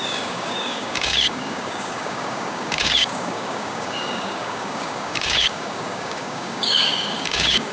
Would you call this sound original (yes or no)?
no